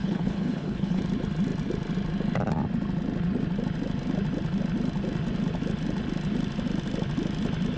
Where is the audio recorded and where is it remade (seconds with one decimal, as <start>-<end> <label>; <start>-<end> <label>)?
0.0-1.0 remade; 1.0-7.8 recorded